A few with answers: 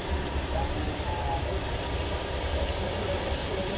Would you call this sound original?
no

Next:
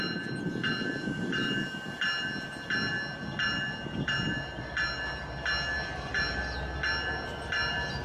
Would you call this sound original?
yes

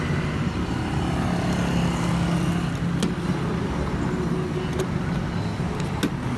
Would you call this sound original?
yes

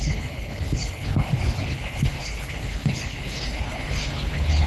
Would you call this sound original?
no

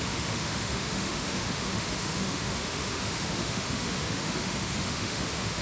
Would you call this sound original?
no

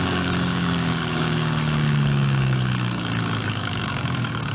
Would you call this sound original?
no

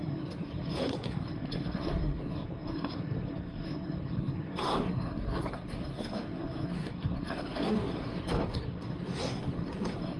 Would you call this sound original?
no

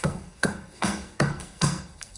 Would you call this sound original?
no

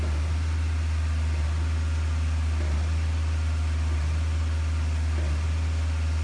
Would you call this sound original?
yes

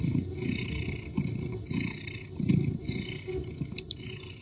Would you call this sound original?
yes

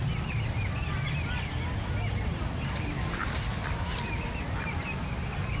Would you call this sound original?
yes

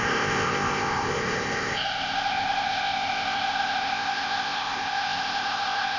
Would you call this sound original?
no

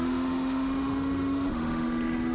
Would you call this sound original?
no